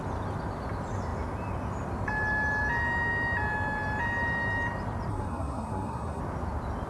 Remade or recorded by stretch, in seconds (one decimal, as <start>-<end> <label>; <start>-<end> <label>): 0.0-5.1 recorded; 5.1-6.2 remade; 6.2-6.9 recorded

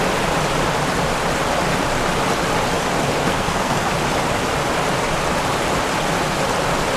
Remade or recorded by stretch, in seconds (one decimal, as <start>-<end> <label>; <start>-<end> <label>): 0.0-3.2 recorded; 3.2-3.9 remade; 3.9-7.0 recorded

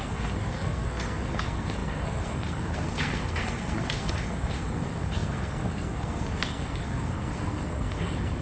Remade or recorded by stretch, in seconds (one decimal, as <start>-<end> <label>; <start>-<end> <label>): 0.0-8.4 remade

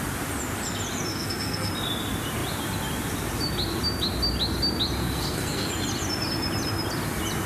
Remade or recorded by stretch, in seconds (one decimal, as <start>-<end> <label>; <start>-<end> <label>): 0.0-1.1 recorded; 1.1-1.7 remade; 1.7-5.0 recorded; 5.0-5.7 remade; 5.7-7.5 recorded

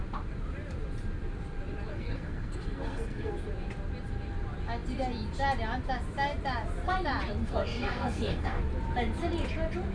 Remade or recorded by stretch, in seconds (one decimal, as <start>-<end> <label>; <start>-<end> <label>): 0.0-1.9 recorded; 1.9-3.3 remade; 3.3-7.4 recorded; 7.4-8.6 remade; 8.6-9.9 recorded

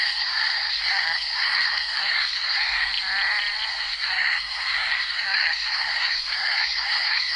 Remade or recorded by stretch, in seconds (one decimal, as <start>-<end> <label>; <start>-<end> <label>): 0.0-2.9 remade; 2.9-3.7 recorded; 3.7-7.4 remade